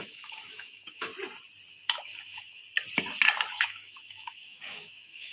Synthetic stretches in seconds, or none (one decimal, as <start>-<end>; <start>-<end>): 0.0-1.1; 1.7-2.6; 3.5-5.3